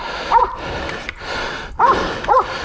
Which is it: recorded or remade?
recorded